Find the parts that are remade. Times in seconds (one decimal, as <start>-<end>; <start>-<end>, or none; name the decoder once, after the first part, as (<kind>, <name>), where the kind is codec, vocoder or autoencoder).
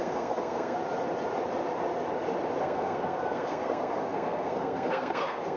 0.0-0.8 (codec, SNAC); 2.6-5.6